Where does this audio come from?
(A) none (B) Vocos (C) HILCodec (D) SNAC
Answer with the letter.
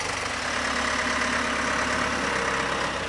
A